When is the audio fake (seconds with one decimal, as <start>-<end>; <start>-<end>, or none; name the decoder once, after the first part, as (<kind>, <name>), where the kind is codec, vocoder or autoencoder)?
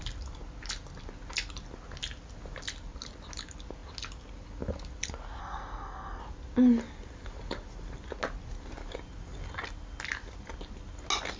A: 5.4-6.2 (codec, SNAC)